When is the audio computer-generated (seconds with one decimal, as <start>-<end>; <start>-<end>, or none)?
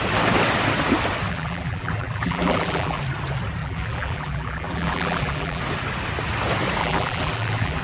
1.3-3.0; 3.6-5.6; 6.8-7.8